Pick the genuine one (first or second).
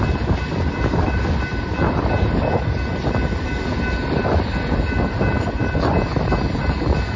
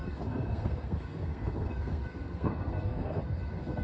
first